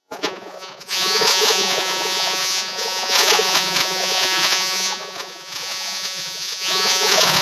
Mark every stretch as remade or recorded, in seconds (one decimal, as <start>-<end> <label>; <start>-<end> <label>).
0.0-7.4 remade